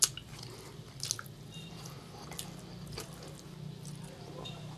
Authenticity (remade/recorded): recorded